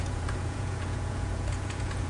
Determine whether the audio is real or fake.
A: fake